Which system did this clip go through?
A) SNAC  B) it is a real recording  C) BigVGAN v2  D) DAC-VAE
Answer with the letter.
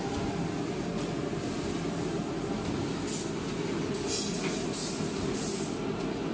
B